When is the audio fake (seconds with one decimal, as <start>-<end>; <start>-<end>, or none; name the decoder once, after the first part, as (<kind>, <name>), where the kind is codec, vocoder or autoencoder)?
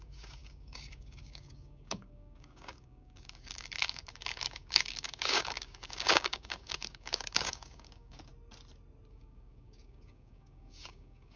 0.0-8.3 (codec, DAC); 9.1-11.4